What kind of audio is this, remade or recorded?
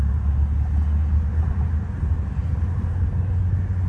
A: recorded